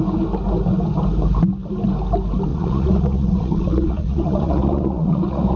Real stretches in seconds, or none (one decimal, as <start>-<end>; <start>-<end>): 0.0-2.5